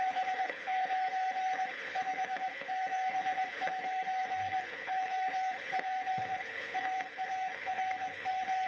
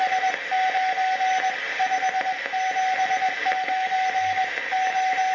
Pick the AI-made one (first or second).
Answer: first